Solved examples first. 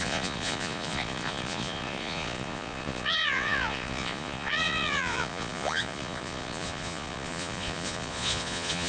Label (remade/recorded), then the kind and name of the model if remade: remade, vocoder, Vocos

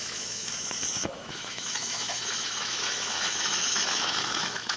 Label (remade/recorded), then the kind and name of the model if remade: remade, autoencoder, DAC-VAE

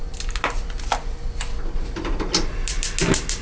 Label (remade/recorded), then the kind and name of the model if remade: recorded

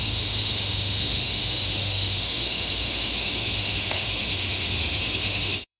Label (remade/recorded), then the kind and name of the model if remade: remade, autoencoder, DAC-VAE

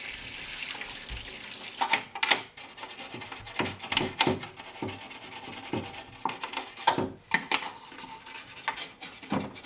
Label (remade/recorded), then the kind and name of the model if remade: recorded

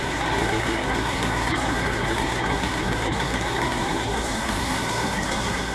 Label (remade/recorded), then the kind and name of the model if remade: remade, codec, SNAC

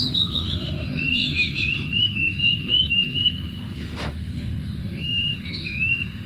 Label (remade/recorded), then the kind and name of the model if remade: remade, autoencoder, DAC-VAE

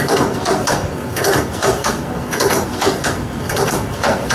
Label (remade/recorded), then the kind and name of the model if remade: remade, codec, SNAC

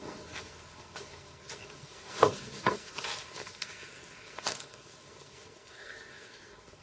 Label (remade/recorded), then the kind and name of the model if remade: remade, codec, SNAC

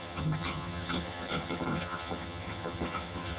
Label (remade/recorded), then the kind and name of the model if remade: remade, vocoder, HiFi-GAN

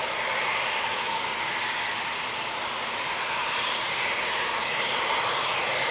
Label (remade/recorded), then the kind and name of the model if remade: recorded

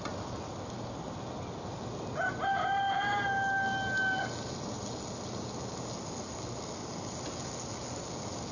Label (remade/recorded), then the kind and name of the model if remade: recorded